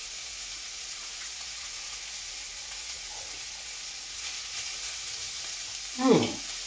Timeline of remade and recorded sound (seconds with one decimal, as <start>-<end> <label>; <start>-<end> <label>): 0.0-5.7 remade; 5.7-6.3 recorded; 6.3-6.7 remade